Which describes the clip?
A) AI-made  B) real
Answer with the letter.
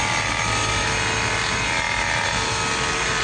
B